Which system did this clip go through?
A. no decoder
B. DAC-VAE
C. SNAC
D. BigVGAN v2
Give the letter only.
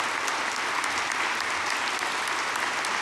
A